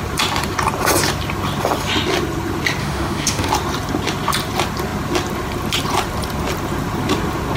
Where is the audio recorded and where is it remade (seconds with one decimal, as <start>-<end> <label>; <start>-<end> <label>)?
0.0-2.8 recorded; 2.8-3.5 remade; 3.5-7.6 recorded